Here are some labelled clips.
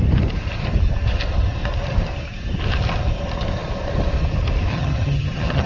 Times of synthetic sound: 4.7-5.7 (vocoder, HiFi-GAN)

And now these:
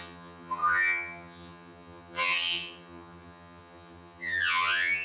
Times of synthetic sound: 0.0-5.0 (vocoder, HiFi-GAN)

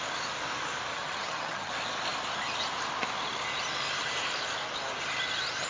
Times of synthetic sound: 0.9-1.7 (vocoder, HiFi-GAN)

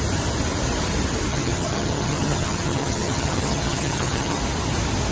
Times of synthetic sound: 1.3-4.4 (vocoder, HiFi-GAN)

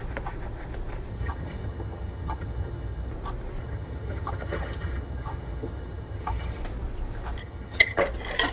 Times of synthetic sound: 1.1-3.1 (vocoder, HiFi-GAN); 3.6-6.6; 7.4-8.0

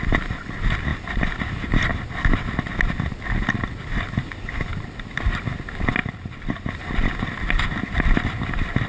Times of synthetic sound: none

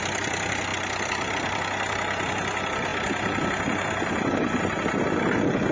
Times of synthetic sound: none